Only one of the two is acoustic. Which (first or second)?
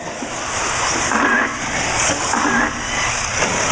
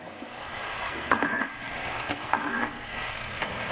first